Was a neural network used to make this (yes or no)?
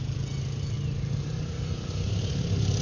no